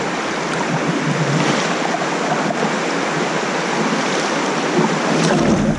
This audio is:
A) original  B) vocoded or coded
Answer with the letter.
A